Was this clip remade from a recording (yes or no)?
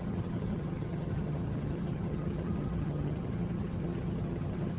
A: yes